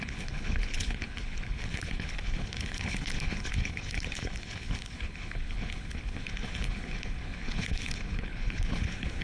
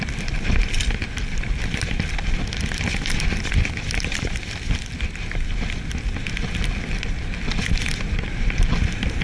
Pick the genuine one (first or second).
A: second